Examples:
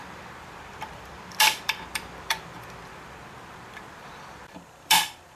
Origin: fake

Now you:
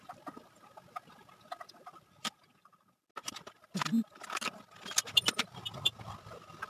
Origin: real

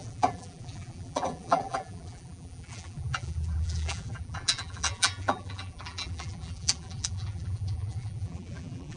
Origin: fake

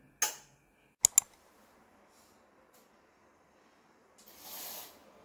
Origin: real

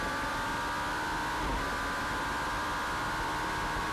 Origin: fake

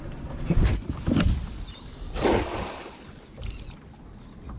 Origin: real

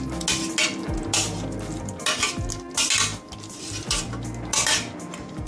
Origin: real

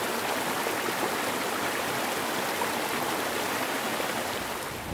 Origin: real